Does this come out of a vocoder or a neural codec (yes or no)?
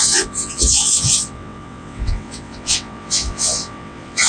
yes